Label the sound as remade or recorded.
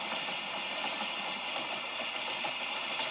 recorded